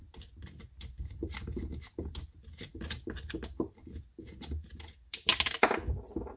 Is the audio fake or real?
real